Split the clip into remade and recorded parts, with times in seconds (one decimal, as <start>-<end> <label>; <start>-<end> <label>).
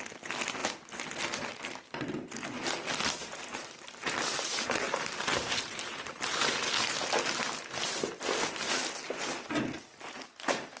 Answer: 0.0-3.2 recorded; 3.2-6.6 remade; 6.6-10.8 recorded